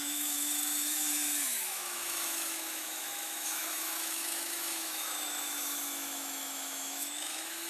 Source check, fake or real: fake